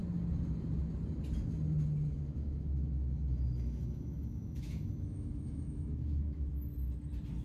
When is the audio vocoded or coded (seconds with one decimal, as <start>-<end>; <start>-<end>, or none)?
2.1-6.5